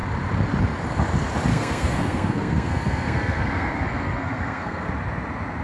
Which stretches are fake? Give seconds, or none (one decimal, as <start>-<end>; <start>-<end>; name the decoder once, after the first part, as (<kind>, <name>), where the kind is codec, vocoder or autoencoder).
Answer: 1.5-4.9 (codec, SNAC)